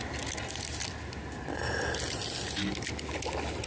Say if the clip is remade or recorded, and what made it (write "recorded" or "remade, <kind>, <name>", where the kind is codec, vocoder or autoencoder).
recorded